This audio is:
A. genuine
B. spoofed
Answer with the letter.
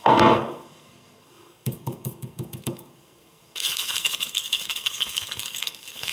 B